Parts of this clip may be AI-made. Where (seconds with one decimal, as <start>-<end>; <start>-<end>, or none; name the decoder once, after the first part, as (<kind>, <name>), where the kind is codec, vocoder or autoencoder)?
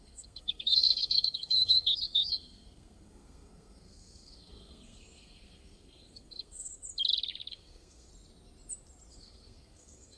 0.0-6.7 (codec, SNAC); 7.5-8.1; 9.1-10.2